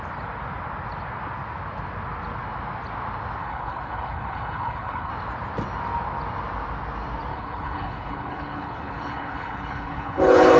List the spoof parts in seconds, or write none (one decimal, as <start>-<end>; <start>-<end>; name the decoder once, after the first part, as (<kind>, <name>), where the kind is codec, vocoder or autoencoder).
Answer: 3.4-5.1 (codec, HILCodec); 7.3-10.6